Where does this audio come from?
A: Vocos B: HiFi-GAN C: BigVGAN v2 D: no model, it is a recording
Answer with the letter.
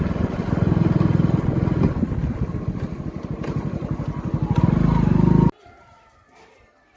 D